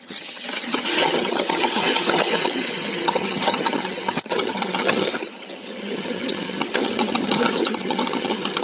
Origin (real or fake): fake